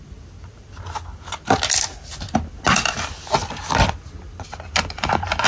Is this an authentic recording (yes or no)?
yes